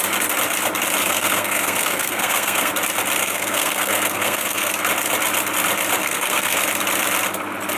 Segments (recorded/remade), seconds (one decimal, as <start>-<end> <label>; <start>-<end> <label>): 0.0-1.0 recorded; 1.0-2.7 remade; 2.7-3.2 recorded; 3.2-4.7 remade; 4.7-6.0 recorded; 6.0-6.6 remade; 6.6-7.8 recorded